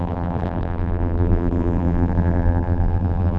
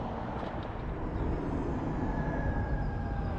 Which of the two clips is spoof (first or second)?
first